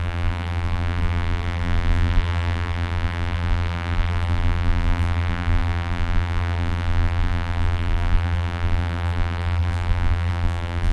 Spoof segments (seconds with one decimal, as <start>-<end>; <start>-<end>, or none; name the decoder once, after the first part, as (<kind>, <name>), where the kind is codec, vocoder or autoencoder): 0.0-10.9 (vocoder, BigVGAN v2)